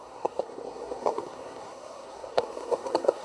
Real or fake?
fake